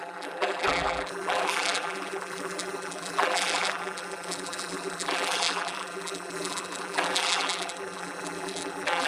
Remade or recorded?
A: remade